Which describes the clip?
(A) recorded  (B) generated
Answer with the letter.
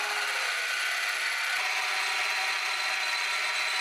A